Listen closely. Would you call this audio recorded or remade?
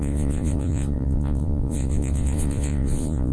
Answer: remade